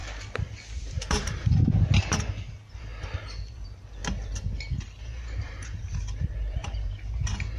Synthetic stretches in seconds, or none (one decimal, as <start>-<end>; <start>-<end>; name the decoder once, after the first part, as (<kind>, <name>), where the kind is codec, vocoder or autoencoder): 0.8-1.6 (vocoder, BigVGAN v2); 2.5-2.9; 3.5-4.0; 5.0-7.6